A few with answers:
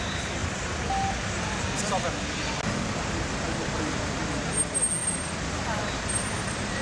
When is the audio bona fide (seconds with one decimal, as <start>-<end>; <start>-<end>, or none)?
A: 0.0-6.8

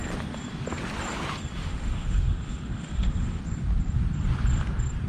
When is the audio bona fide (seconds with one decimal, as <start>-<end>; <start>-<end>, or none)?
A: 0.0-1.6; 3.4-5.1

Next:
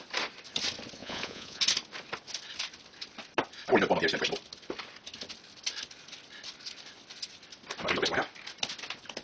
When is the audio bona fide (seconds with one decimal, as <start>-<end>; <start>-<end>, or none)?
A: 0.0-1.0; 1.6-9.2

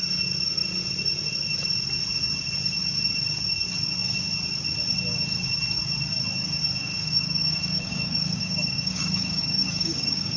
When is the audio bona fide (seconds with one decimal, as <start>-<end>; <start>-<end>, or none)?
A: 0.0-6.8

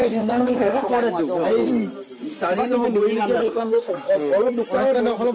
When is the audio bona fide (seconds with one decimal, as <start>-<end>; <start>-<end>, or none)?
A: 0.9-3.4; 3.9-5.3

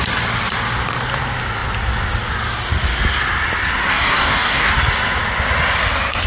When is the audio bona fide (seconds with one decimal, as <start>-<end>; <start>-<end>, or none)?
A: 0.0-3.9; 4.7-6.3

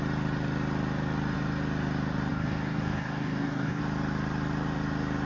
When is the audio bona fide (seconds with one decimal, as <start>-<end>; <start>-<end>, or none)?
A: 0.0-2.3; 3.8-5.3

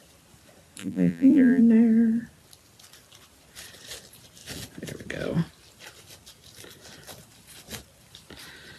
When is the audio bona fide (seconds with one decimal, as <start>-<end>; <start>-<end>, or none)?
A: 0.0-0.8; 1.6-8.8